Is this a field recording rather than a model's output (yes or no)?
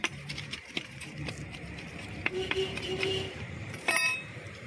no